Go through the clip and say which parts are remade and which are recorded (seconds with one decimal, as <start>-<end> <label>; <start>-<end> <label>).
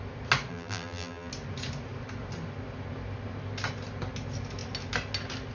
0.0-0.5 recorded; 0.5-1.3 remade; 1.3-5.5 recorded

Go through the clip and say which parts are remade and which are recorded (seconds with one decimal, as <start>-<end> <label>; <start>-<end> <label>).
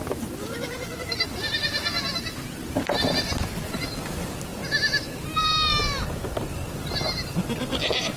0.0-3.1 remade; 3.1-4.5 recorded; 4.5-5.0 remade; 5.0-5.7 recorded; 5.7-6.4 remade; 6.4-8.2 recorded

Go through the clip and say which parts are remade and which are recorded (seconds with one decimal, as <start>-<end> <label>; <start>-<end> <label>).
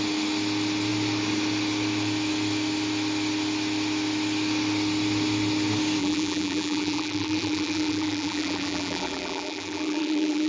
0.0-6.0 recorded; 6.0-10.5 remade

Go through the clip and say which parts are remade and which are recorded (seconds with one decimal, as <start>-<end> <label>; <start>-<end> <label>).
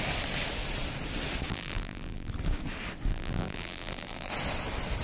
0.0-1.5 recorded; 1.5-2.3 remade; 2.3-3.1 recorded; 3.1-4.3 remade; 4.3-5.0 recorded